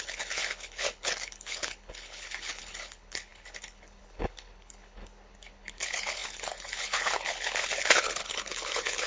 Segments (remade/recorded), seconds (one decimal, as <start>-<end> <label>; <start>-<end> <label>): 0.0-9.1 remade